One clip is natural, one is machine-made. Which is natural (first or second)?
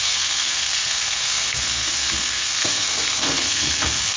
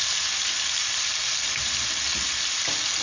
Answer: second